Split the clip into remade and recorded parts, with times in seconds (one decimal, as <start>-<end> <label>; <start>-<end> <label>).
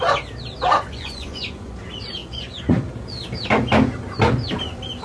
0.0-0.7 recorded; 0.7-1.7 remade; 1.7-2.2 recorded; 2.2-2.9 remade; 2.9-5.0 recorded